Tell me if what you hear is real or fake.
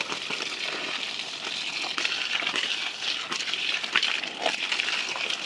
real